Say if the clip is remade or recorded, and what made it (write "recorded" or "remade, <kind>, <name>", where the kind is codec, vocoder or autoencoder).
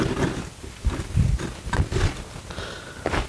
recorded